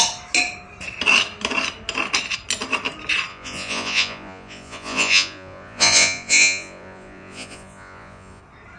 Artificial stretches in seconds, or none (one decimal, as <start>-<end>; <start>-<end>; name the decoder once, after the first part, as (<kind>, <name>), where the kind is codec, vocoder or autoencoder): 3.3-8.4 (vocoder, Vocos)